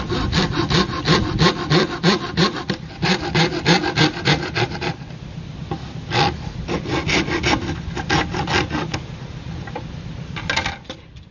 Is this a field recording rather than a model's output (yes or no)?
yes